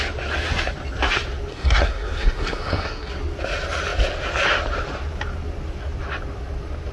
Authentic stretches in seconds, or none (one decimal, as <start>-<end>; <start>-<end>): 0.0-1.5; 3.1-6.9